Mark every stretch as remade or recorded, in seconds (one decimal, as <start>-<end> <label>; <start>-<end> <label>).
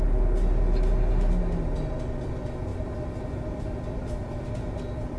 0.0-2.7 recorded; 2.7-4.8 remade; 4.8-5.2 recorded